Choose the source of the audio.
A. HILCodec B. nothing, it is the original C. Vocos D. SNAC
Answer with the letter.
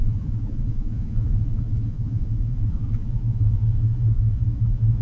C